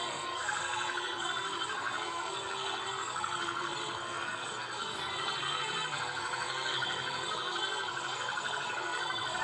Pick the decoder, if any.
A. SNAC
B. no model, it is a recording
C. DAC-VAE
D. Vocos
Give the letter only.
A